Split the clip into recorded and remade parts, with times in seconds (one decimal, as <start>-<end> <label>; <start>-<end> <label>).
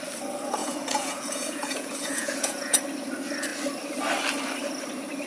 0.0-0.6 recorded; 0.6-2.8 remade; 2.8-5.3 recorded